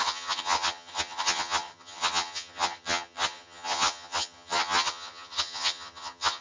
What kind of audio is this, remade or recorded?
remade